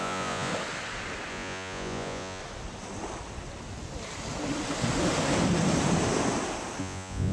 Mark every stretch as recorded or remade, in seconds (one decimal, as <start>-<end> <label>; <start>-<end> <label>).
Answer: 0.0-0.5 remade; 0.5-1.3 recorded; 1.3-2.4 remade; 2.4-6.8 recorded; 6.8-7.3 remade